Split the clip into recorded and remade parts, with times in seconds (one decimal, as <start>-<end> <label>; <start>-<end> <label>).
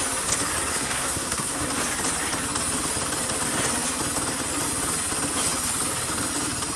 0.0-0.7 recorded; 0.7-1.7 remade; 1.7-6.8 recorded